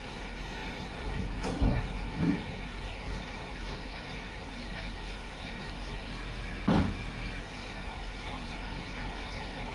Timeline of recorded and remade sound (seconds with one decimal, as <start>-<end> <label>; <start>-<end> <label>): 0.0-6.1 remade; 6.1-7.4 recorded; 7.4-9.7 remade